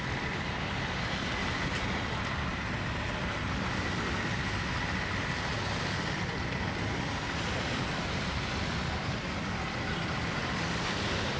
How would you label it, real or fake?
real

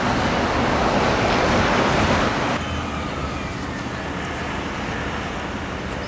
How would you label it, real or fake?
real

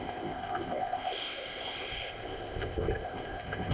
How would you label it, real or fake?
fake